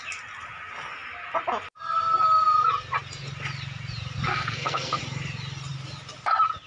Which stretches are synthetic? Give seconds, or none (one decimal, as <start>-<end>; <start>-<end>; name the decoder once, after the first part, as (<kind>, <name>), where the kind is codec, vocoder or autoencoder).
4.3-5.0 (codec, SNAC)